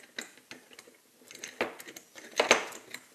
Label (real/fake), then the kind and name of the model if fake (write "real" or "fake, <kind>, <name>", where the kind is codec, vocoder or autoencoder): real